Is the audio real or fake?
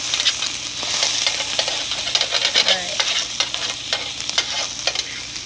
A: real